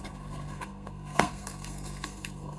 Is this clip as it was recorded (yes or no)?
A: no